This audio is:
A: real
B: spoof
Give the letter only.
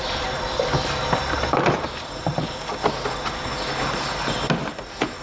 A